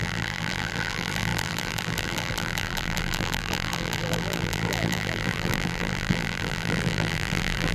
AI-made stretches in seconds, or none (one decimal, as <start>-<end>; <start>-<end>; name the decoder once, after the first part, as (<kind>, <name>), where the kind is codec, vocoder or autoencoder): 0.0-7.7 (vocoder, BigVGAN v2)